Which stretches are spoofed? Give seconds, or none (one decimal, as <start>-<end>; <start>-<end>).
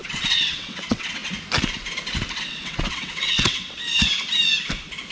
0.0-1.2; 2.4-3.8